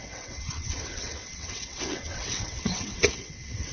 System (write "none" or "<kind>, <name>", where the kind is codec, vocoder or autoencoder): vocoder, WaveNeXt